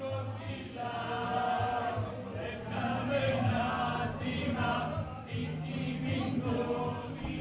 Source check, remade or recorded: recorded